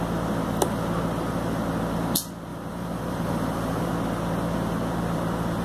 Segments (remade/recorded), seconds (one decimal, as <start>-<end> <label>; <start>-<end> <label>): 0.0-2.5 recorded; 2.5-3.9 remade; 3.9-5.6 recorded